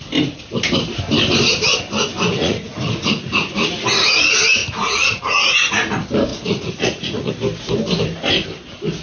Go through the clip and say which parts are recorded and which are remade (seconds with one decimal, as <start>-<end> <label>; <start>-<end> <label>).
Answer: 0.0-2.3 recorded; 2.3-3.6 remade; 3.6-4.6 recorded; 4.6-5.5 remade; 5.5-6.3 recorded; 6.3-7.3 remade; 7.3-9.0 recorded